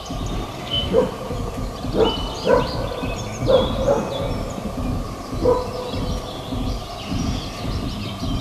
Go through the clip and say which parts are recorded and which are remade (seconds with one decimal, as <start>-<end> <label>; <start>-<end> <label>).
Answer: 0.0-0.5 recorded; 0.5-1.0 remade; 1.0-8.4 recorded